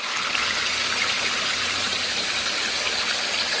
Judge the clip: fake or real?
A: real